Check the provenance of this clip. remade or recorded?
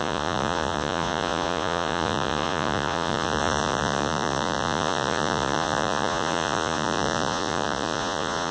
remade